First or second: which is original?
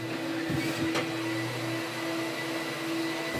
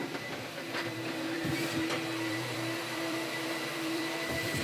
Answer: first